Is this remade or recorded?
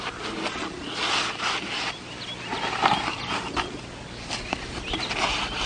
recorded